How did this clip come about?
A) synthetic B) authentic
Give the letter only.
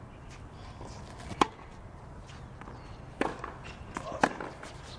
B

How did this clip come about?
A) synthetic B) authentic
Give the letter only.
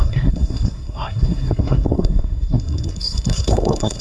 A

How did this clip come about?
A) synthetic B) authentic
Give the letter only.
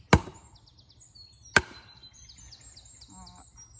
B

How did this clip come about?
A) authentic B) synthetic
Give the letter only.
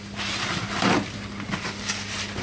B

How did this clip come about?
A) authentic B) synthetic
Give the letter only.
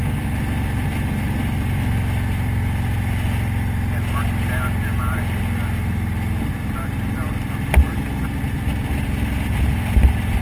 A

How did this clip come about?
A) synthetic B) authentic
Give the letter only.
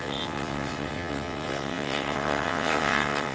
A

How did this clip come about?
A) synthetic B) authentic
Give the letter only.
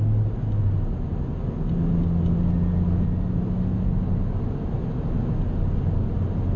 B